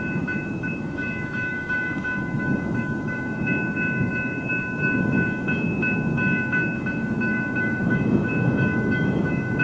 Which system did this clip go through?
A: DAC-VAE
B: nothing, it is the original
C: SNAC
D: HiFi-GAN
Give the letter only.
A